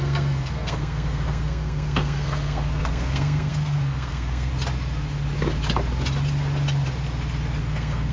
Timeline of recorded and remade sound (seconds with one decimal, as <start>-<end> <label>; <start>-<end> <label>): 0.0-4.5 remade; 4.5-7.6 recorded; 7.6-8.1 remade